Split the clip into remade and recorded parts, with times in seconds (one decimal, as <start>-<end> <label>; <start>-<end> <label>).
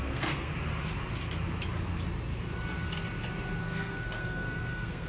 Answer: 0.0-0.5 remade; 0.5-3.6 recorded; 3.6-5.1 remade